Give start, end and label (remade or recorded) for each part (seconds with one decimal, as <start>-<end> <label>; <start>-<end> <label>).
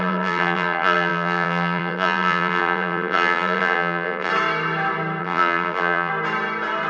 0.0-4.3 remade; 4.3-5.2 recorded; 5.2-6.1 remade; 6.1-6.9 recorded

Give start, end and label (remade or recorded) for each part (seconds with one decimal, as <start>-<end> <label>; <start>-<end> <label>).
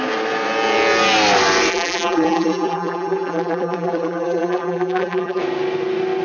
0.0-1.7 recorded; 1.7-5.4 remade; 5.4-6.2 recorded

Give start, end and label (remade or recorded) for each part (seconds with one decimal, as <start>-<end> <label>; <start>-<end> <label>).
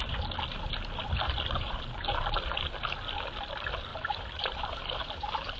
0.0-3.9 recorded; 3.9-4.8 remade; 4.8-5.6 recorded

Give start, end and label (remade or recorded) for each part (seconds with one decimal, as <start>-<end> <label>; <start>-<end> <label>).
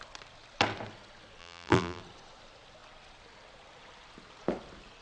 0.0-1.4 recorded; 1.4-2.0 remade; 2.0-5.0 recorded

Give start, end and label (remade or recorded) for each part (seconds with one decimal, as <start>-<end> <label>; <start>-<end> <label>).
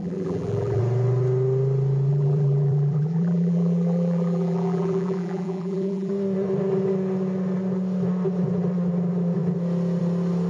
0.0-0.8 remade; 0.8-2.1 recorded; 2.1-6.1 remade; 6.1-10.5 recorded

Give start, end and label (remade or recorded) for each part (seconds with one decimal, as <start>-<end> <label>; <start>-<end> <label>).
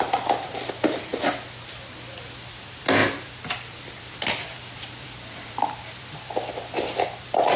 0.0-1.1 remade; 1.1-2.1 recorded; 2.1-7.6 remade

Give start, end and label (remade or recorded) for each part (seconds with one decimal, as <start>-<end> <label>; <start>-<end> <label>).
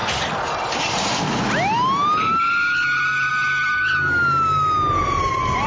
0.0-1.2 remade; 1.2-5.7 recorded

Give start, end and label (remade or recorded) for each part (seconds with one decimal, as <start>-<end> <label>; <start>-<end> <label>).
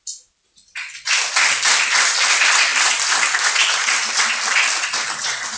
0.0-5.6 recorded